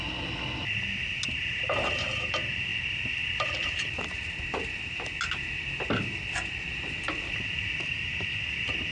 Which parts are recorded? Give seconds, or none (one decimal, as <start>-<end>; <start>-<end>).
0.0-8.9